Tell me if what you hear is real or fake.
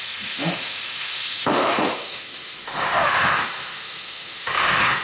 fake